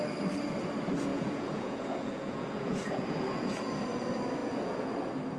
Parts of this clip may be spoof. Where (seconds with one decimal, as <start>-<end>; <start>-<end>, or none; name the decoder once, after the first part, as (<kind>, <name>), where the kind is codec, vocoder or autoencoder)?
1.1-3.7 (vocoder, Vocos); 4.4-4.9